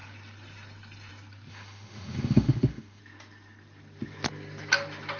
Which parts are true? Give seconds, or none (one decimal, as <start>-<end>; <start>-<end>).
0.0-1.5; 3.0-5.2